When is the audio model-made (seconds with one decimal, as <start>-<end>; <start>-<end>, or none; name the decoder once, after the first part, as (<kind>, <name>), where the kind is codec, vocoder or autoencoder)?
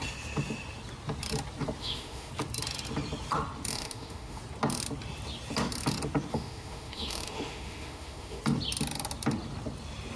1.8-2.3 (autoencoder, DAC-VAE); 3.7-4.4; 6.3-8.4